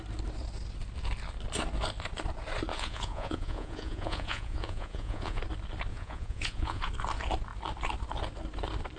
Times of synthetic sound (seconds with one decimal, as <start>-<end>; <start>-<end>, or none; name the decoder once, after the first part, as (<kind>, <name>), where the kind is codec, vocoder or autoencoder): 2.7-5.4 (vocoder, Vocos); 5.9-6.9